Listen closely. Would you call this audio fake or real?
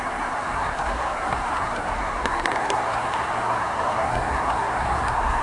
fake